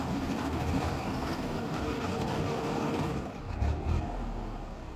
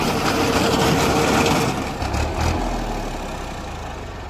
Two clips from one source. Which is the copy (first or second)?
first